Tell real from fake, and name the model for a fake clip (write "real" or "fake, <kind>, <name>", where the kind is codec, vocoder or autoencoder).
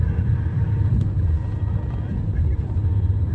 real